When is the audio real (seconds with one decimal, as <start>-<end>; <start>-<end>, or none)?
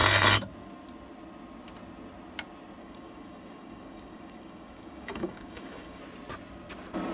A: 0.0-2.8; 6.0-7.1